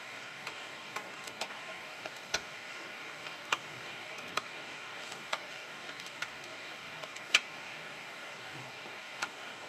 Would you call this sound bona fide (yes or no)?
no